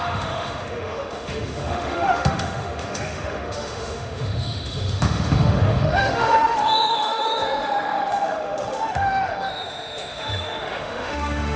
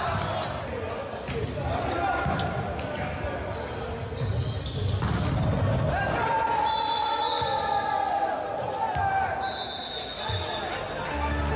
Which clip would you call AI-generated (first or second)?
first